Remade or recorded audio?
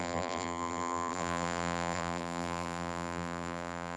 remade